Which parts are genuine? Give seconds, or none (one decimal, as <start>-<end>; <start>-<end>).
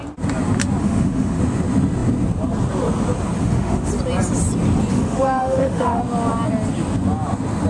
0.0-0.8; 1.4-3.4; 3.9-4.9; 6.0-7.7